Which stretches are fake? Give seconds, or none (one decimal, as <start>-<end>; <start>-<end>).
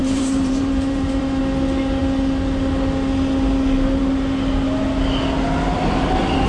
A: 0.0-1.4